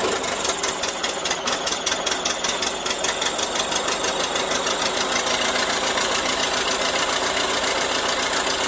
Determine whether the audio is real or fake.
real